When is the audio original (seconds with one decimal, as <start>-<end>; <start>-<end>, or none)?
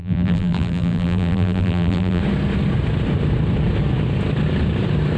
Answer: 2.2-5.2